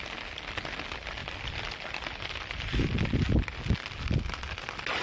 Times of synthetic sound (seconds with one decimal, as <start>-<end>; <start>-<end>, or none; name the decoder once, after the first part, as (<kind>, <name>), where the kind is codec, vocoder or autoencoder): none